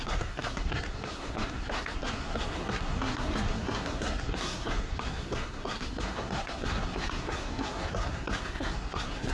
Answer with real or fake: fake